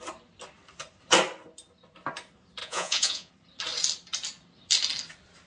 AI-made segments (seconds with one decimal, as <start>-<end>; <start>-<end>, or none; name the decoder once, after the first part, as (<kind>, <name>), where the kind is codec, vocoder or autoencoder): 2.6-3.3 (vocoder, Vocos)